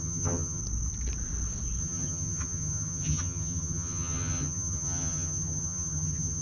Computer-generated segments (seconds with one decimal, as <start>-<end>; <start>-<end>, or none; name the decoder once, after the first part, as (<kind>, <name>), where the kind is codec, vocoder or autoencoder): 0.0-0.6 (vocoder, HiFi-GAN); 1.8-6.4